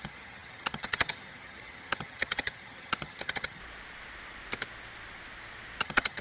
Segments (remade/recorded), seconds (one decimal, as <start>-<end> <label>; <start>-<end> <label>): 0.0-3.6 remade; 3.6-5.8 recorded; 5.8-6.2 remade